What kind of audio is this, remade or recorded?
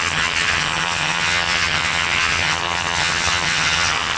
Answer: remade